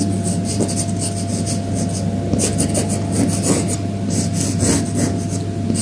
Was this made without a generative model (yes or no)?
yes